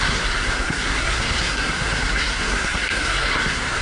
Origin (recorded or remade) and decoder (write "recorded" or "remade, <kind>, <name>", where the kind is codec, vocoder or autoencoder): remade, codec, SNAC